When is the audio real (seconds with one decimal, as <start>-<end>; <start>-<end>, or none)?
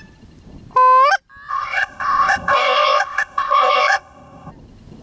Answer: 0.0-1.5; 4.5-5.0